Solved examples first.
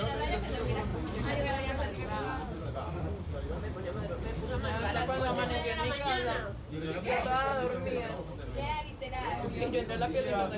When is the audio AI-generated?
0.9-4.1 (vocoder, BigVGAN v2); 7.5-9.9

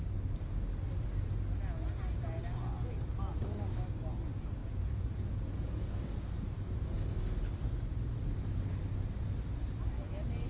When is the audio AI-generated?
4.6-5.9 (vocoder, Vocos)

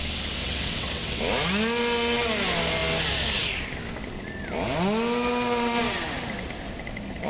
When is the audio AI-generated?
0.4-1.2 (vocoder, WaveNeXt)

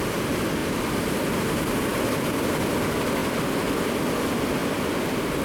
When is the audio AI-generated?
0.6-1.6 (vocoder, BigVGAN v2)

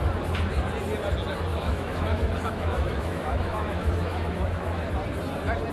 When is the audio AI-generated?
1.5-4.9 (autoencoder, DAC-VAE)